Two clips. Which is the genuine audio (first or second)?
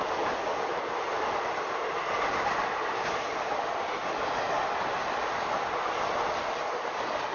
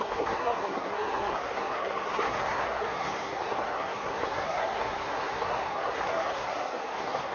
first